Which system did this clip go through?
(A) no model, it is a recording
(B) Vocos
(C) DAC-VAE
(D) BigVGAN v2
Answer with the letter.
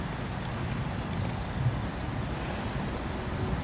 A